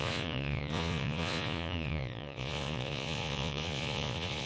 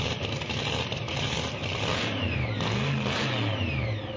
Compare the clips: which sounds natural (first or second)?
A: second